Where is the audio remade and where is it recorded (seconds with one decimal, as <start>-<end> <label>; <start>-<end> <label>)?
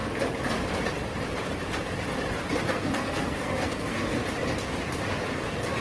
0.0-2.7 recorded; 2.7-4.2 remade; 4.2-5.8 recorded